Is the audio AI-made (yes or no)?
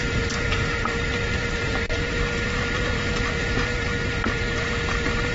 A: yes